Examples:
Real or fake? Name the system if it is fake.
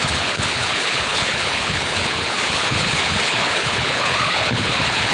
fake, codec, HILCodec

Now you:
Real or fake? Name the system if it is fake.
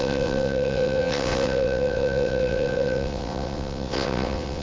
fake, vocoder, WaveNeXt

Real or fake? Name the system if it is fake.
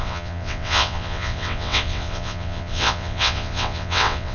fake, vocoder, WaveNeXt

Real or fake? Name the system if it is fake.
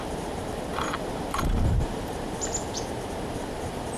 fake, vocoder, BigVGAN v2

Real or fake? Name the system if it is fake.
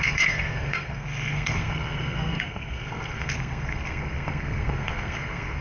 fake, codec, SNAC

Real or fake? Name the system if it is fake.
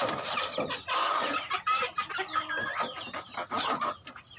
real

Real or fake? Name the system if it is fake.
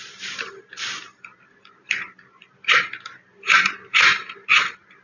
fake, vocoder, BigVGAN v2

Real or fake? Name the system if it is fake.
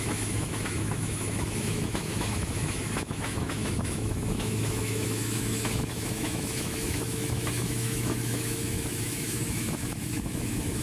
fake, autoencoder, DAC-VAE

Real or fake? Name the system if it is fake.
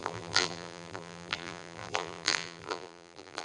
fake, vocoder, BigVGAN v2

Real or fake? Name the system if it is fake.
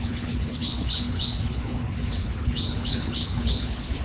fake, codec, HILCodec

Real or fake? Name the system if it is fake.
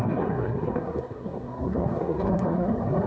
fake, codec, SNAC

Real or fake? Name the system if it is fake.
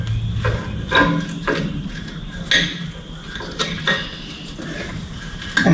real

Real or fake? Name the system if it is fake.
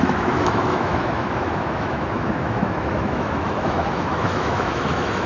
fake, autoencoder, DAC-VAE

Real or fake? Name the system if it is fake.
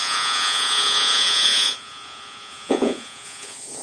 fake, vocoder, Vocos